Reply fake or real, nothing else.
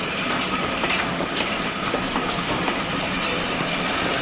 real